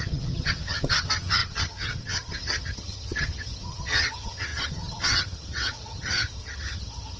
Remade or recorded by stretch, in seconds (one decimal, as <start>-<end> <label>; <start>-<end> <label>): 0.0-7.2 remade